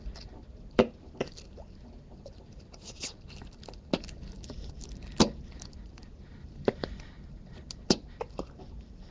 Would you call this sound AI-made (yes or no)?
no